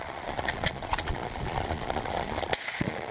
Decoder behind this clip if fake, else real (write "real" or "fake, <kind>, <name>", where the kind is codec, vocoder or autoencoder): fake, vocoder, Vocos